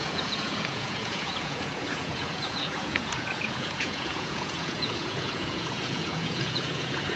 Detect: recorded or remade remade